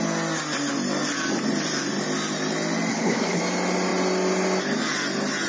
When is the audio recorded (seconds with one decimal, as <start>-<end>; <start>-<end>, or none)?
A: 0.0-2.9; 3.4-5.5

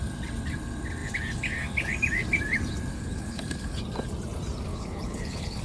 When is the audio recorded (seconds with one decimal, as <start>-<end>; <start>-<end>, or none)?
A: 0.0-2.9; 3.8-4.7

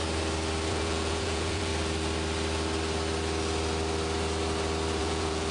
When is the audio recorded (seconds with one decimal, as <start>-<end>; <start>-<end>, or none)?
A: 0.0-0.7; 1.7-5.0